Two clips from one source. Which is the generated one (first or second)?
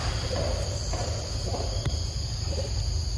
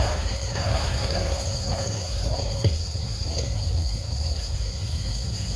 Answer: second